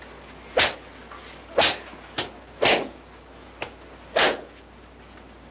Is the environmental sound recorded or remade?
recorded